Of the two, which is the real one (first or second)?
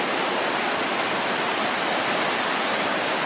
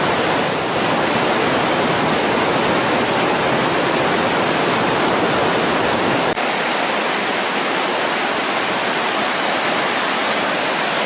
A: first